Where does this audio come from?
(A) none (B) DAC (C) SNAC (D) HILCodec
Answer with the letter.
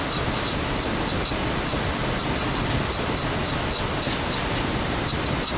A